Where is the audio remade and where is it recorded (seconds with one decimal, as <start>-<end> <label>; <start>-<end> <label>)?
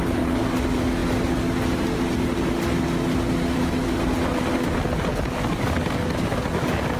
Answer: 0.0-5.1 recorded; 5.1-7.0 remade